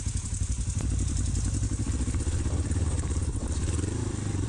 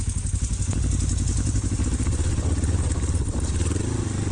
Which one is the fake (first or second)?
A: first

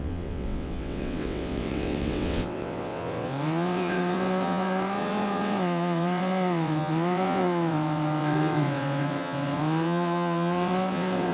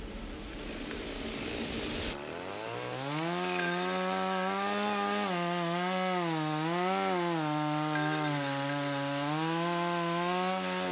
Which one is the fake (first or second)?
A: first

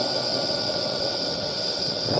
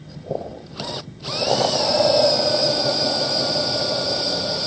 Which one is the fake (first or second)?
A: first